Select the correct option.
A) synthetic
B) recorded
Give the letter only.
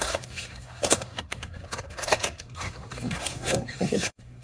A